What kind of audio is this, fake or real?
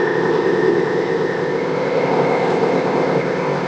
fake